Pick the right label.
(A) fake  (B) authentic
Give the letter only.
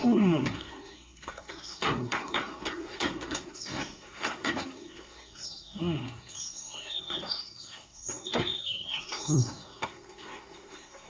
A